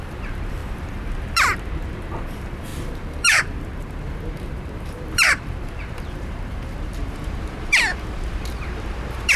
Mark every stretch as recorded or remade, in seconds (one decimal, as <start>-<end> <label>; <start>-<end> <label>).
0.0-9.4 remade